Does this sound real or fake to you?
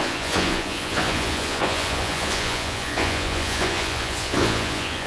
fake